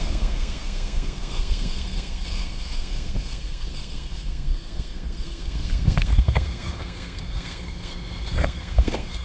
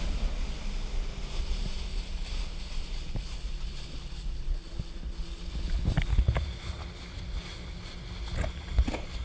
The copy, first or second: first